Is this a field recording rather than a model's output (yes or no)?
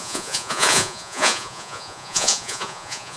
no